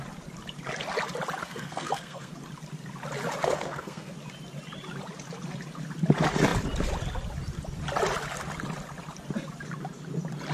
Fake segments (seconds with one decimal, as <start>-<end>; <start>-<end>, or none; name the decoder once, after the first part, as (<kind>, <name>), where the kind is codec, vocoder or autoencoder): 1.4-2.3 (codec, SNAC); 3.4-4.1